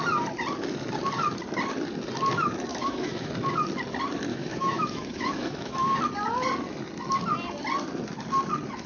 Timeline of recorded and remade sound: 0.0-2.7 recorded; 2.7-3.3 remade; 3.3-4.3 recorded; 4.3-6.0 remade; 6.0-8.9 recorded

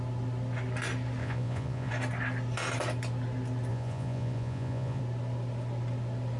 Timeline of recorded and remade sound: 0.0-1.2 recorded; 1.2-1.9 remade; 1.9-3.7 recorded; 3.7-5.0 remade; 5.0-6.4 recorded

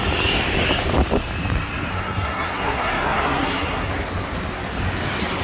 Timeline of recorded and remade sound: 0.0-1.9 recorded; 1.9-3.9 remade; 3.9-5.4 recorded

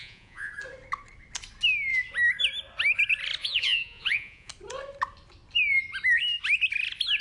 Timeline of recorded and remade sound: 0.0-0.5 remade; 0.5-3.4 recorded; 3.4-4.5 remade; 4.5-7.2 recorded

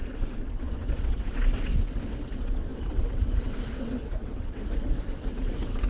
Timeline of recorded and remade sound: 0.0-5.9 remade

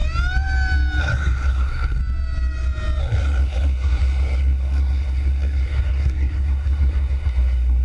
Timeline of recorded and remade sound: 0.0-1.0 recorded; 1.0-2.0 remade; 2.0-3.0 recorded; 3.0-7.8 remade

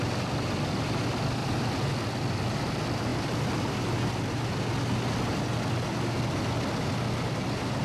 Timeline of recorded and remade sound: 0.0-1.4 recorded; 1.4-2.0 remade; 2.0-7.8 recorded

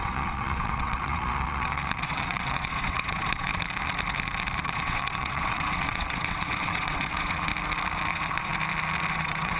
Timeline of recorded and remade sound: 0.0-3.5 remade; 3.5-4.6 recorded; 4.6-7.5 remade; 7.5-8.1 recorded; 8.1-8.5 remade; 8.5-9.1 recorded; 9.1-9.6 remade